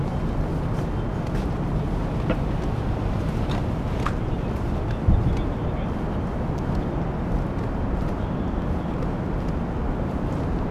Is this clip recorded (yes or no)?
yes